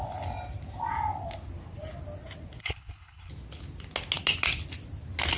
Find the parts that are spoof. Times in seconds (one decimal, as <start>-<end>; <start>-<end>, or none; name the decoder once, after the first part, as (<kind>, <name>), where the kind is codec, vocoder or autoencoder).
2.6-3.3 (codec, HILCodec)